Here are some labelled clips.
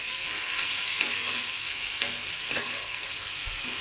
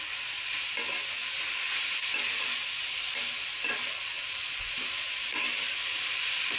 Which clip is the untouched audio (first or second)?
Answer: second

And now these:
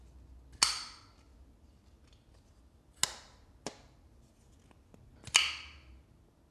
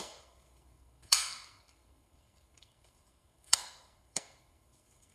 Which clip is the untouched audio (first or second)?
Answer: first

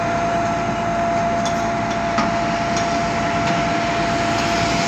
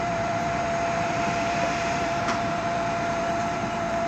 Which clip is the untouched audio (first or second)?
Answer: first